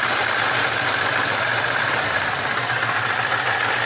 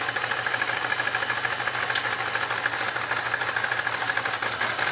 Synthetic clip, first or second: first